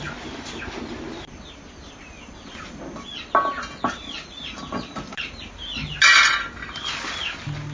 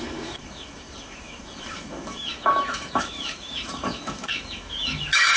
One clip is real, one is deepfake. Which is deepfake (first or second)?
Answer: second